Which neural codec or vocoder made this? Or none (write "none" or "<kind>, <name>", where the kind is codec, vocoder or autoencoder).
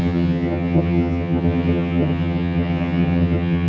vocoder, HiFi-GAN